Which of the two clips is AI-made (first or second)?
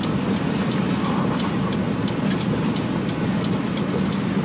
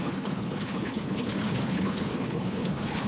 second